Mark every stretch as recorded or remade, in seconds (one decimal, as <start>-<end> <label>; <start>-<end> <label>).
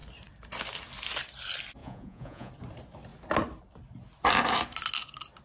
0.0-1.8 recorded; 1.8-2.5 remade; 2.5-5.4 recorded